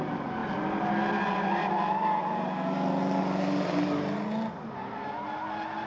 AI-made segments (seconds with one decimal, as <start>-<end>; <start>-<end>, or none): none